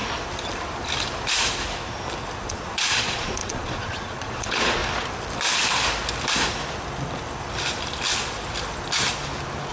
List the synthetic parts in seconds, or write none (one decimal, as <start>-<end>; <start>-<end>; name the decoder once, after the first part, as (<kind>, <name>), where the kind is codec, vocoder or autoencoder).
2.5-4.8 (vocoder, Vocos)